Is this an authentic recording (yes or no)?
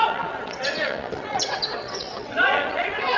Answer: no